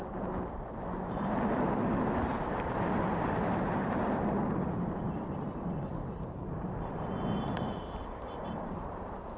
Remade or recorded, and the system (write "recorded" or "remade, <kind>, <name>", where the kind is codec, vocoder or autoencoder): remade, vocoder, BigVGAN v2